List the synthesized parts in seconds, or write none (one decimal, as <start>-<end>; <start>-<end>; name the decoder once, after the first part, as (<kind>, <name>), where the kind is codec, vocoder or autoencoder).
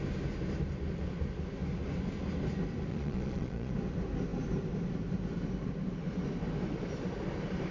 2.9-3.7 (vocoder, Vocos)